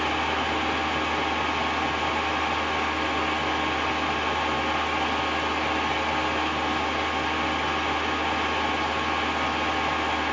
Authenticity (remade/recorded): recorded